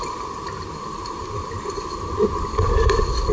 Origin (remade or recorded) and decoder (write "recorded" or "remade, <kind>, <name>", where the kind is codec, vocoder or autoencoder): recorded